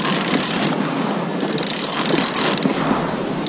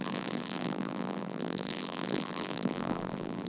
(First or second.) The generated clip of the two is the second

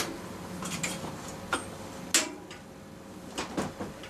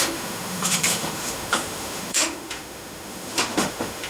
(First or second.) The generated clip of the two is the second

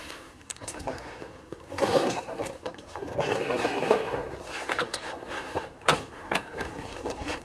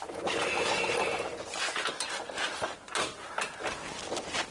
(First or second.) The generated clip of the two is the first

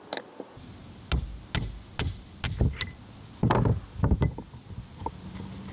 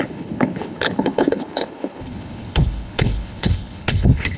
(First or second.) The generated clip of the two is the second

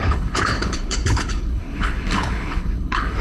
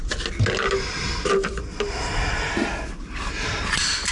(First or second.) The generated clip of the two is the first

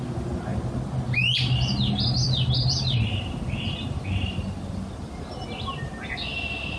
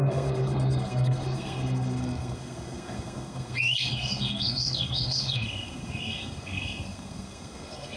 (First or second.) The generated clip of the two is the second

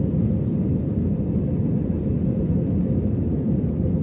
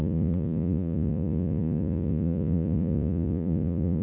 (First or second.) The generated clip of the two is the second